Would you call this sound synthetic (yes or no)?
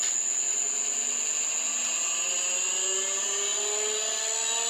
no